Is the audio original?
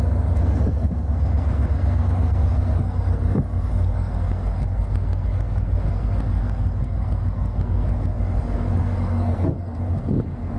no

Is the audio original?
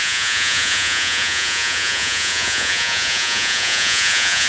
no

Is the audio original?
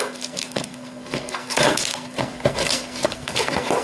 no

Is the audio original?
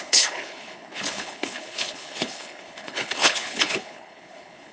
no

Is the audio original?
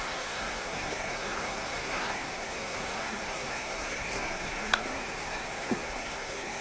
no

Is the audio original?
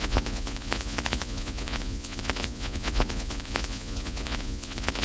no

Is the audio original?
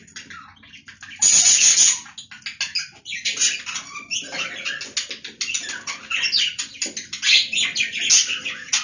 yes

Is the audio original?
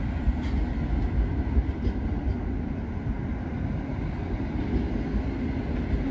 yes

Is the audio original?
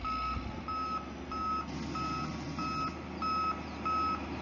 yes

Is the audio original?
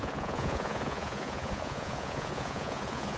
no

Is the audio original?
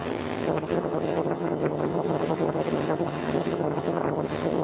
no